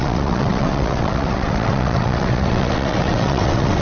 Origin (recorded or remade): remade